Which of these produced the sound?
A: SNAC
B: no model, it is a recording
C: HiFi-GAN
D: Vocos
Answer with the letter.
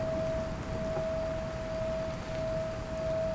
B